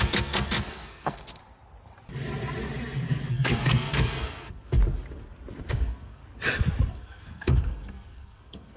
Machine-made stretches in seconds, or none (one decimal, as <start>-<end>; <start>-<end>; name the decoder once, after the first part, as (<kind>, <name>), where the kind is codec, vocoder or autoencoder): 0.0-1.4 (codec, SNAC); 3.3-4.8; 5.7-6.2; 6.9-8.8